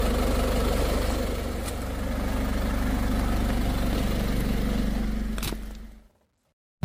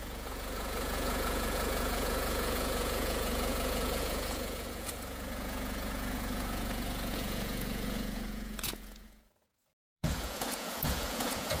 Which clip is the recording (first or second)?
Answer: first